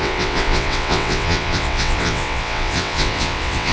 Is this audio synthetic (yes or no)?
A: yes